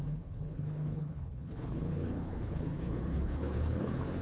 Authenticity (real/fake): fake